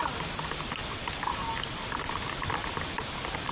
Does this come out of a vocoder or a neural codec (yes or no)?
no